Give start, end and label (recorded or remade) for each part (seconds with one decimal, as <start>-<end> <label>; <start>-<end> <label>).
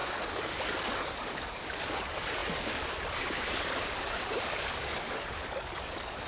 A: 0.0-6.3 remade